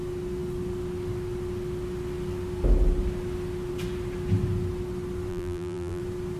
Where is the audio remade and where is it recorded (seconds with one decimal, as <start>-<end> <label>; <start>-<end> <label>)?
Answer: 0.0-5.3 recorded; 5.3-6.0 remade; 6.0-6.4 recorded